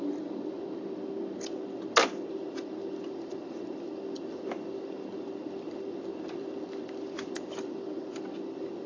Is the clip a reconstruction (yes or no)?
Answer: no